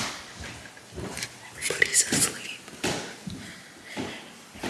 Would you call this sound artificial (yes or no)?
no